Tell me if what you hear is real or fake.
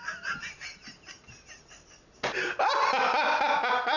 real